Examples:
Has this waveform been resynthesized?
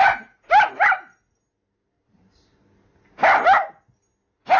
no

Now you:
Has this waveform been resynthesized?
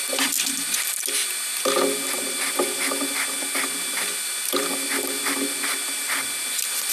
no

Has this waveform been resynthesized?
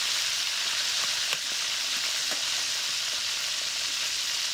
no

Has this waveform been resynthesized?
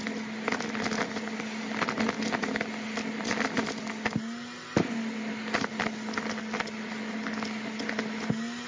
no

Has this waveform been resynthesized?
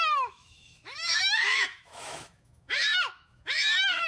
yes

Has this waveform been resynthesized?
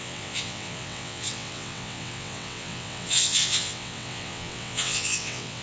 yes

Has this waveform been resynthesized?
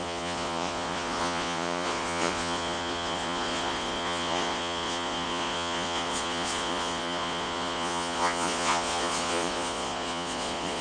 yes